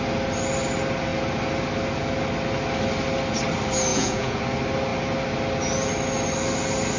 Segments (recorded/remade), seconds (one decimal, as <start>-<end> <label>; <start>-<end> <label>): 0.0-3.9 recorded; 3.9-4.4 remade; 4.4-7.0 recorded